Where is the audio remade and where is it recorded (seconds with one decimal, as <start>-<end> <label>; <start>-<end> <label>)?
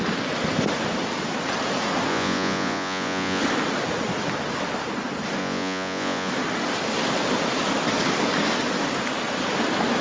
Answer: 0.0-2.1 recorded; 2.1-3.4 remade; 3.4-5.4 recorded; 5.4-6.3 remade; 6.3-10.0 recorded